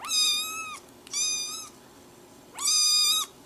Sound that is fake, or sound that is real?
real